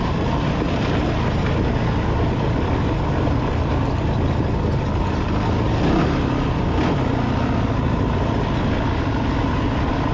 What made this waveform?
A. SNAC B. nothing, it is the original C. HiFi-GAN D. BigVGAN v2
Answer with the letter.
B